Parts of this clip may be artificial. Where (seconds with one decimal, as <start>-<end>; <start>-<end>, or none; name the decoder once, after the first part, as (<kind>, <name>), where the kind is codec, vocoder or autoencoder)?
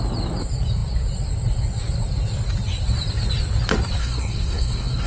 4.0-5.1 (codec, SNAC)